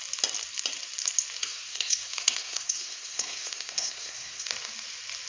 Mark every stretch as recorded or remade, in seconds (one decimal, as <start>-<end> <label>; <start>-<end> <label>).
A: 0.0-1.4 recorded; 1.4-4.5 remade; 4.5-5.3 recorded